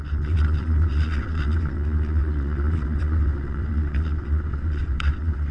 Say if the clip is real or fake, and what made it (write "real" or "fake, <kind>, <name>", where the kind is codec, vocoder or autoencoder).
fake, vocoder, WaveNeXt